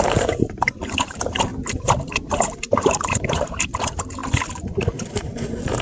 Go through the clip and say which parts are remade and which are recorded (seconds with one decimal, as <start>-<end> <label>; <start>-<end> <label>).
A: 0.0-4.2 remade; 4.2-5.1 recorded; 5.1-5.8 remade